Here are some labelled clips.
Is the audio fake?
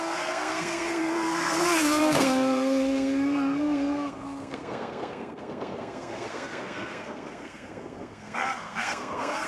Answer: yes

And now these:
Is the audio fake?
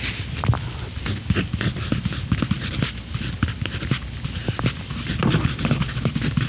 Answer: no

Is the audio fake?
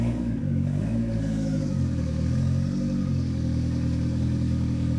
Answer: yes